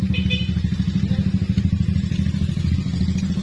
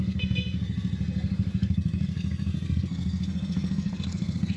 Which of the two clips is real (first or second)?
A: first